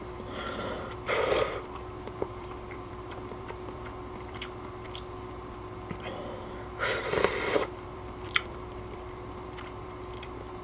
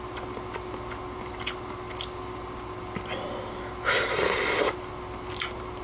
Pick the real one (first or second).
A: second